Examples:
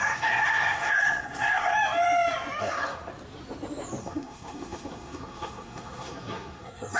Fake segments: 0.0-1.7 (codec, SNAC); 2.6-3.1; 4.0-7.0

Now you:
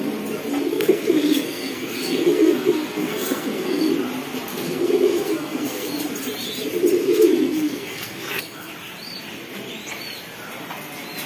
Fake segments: 0.7-3.9 (codec, SNAC); 4.5-5.9; 7.0-8.7

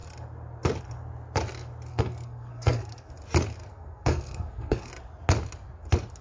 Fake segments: 1.9-3.1 (codec, SNAC); 3.6-4.9